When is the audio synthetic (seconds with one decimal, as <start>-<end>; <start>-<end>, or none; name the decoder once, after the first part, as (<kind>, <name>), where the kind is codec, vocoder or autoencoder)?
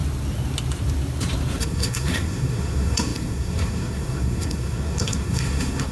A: 1.6-5.9 (codec, SNAC)